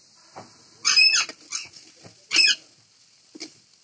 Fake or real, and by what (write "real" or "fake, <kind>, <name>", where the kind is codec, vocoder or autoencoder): real